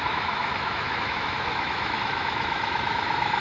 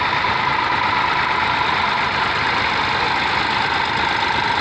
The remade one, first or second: first